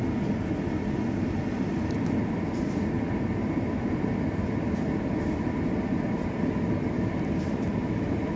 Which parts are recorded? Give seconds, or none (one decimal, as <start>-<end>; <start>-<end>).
0.0-3.4; 4.4-7.7